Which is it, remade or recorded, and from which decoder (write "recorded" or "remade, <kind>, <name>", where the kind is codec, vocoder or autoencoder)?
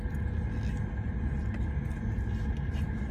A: recorded